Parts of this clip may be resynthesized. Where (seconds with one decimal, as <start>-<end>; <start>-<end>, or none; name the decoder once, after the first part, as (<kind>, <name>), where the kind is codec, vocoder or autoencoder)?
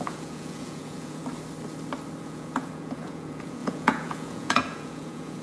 0.0-1.2 (vocoder, Vocos); 2.2-5.4